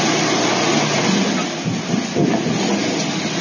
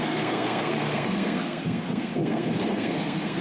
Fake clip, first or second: second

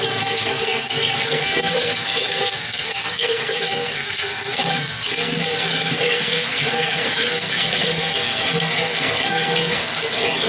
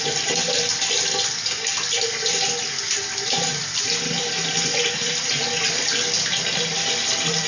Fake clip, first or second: first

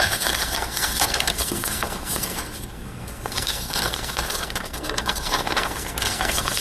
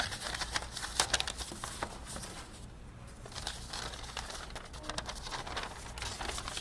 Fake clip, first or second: first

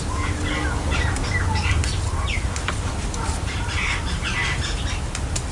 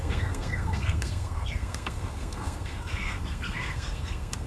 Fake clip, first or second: second